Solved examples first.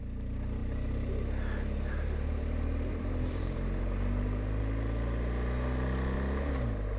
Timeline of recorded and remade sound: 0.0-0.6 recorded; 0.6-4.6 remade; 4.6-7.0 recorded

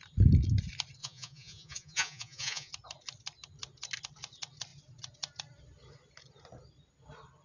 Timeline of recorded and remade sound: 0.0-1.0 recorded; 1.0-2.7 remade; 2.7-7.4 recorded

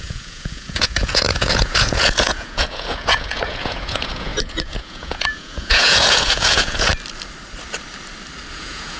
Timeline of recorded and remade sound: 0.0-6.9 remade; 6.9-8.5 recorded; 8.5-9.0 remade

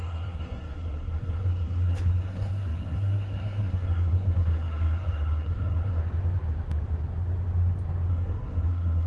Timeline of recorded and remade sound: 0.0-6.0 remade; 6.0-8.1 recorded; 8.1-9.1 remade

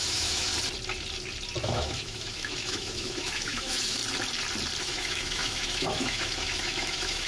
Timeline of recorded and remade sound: 0.0-0.5 remade; 0.5-1.6 recorded; 1.6-4.0 remade; 4.0-4.8 recorded; 4.8-7.3 remade